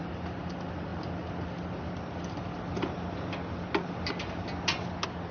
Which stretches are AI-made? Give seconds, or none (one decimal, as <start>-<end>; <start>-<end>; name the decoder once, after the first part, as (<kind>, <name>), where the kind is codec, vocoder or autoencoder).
none